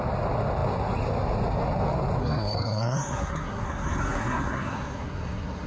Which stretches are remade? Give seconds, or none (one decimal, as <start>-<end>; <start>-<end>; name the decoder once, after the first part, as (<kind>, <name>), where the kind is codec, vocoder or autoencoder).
2.2-5.7 (codec, SNAC)